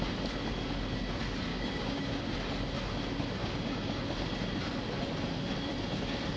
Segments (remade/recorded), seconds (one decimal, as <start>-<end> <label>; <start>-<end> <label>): 0.0-1.5 recorded; 1.5-2.2 remade; 2.2-3.4 recorded; 3.4-4.0 remade; 4.0-6.4 recorded